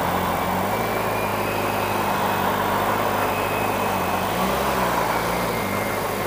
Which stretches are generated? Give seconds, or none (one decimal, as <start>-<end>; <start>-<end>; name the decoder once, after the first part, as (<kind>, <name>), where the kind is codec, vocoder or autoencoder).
none